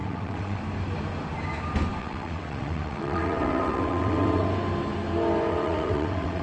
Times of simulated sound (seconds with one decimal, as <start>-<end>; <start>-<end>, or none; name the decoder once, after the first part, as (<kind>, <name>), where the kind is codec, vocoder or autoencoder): 0.0-0.6 (vocoder, WaveNeXt); 2.0-4.5; 5.5-6.4